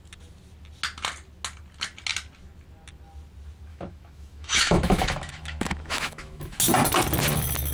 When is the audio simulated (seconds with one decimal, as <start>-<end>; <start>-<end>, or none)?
3.7-6.6